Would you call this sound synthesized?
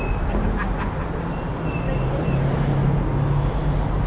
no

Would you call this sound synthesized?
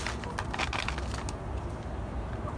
no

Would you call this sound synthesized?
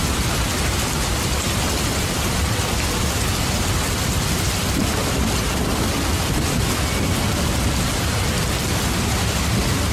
no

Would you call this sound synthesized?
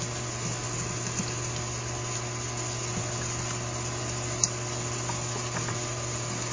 no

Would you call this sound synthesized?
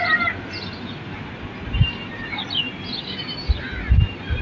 no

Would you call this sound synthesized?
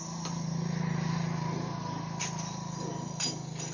no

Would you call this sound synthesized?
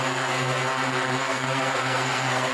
yes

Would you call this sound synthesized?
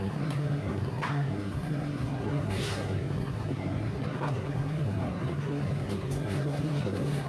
yes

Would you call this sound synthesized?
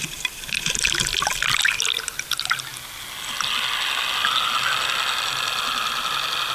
no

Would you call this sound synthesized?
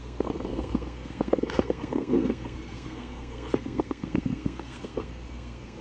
yes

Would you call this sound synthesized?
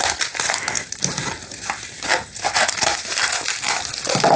no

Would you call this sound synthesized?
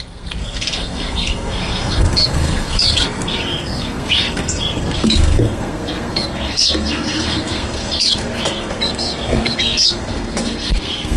yes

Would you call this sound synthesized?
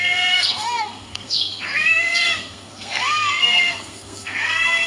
yes